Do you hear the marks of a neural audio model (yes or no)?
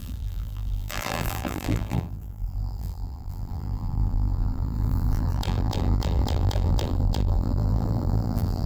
yes